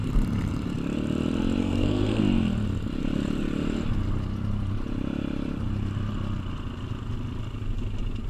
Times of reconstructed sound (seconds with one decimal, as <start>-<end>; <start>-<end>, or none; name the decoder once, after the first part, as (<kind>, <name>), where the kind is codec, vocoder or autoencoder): 1.6-2.2 (codec, SNAC)